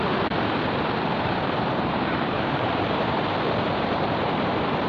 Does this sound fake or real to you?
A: fake